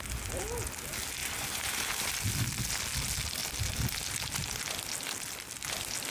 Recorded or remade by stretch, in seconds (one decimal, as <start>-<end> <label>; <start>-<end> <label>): 0.0-1.2 recorded; 1.2-2.1 remade; 2.1-6.1 recorded